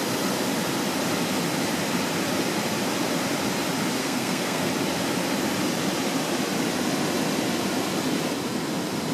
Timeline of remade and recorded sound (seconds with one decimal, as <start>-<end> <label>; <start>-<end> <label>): 0.0-4.0 recorded; 4.0-4.7 remade; 4.7-9.1 recorded

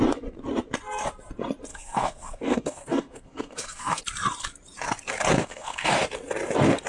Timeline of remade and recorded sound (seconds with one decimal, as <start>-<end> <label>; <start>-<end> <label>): 0.0-1.7 recorded; 1.7-4.0 remade; 4.0-5.4 recorded; 5.4-5.9 remade; 5.9-6.9 recorded

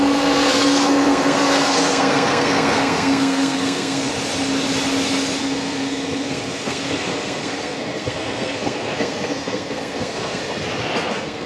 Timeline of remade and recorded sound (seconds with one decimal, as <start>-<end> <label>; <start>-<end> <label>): 0.0-4.1 remade; 4.1-5.4 recorded; 5.4-10.4 remade; 10.4-11.1 recorded; 11.1-11.5 remade

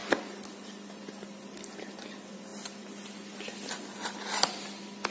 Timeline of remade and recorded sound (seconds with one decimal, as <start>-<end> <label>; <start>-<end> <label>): 0.0-5.1 recorded